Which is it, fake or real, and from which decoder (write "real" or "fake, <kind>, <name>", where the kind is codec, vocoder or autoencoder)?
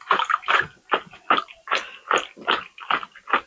real